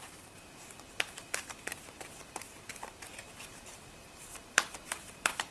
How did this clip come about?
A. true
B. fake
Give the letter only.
B